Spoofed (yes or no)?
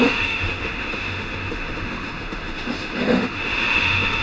yes